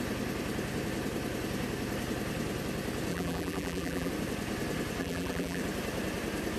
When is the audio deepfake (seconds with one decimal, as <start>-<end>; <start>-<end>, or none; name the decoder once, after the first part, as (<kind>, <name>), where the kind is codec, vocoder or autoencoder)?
3.1-4.1 (vocoder, BigVGAN v2); 5.0-5.6